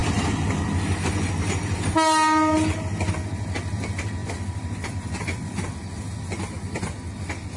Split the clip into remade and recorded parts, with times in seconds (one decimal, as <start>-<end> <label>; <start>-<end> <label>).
0.0-4.2 recorded; 4.2-5.7 remade; 5.7-7.6 recorded